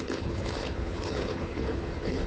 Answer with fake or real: fake